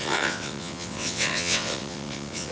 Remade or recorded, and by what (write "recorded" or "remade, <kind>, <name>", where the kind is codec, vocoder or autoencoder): remade, vocoder, WaveNeXt